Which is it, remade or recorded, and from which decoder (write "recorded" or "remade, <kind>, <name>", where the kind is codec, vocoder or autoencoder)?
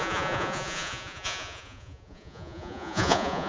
remade, vocoder, Vocos